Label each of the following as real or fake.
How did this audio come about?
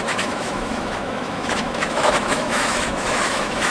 fake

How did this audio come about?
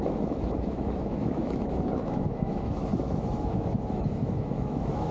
fake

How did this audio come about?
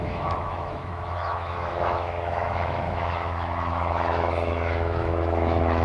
fake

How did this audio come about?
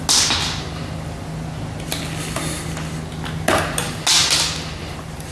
real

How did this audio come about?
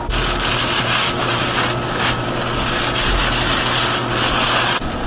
real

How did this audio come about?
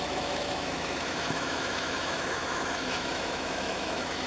fake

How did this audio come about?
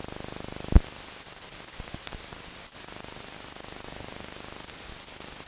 real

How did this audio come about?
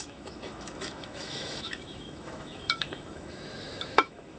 fake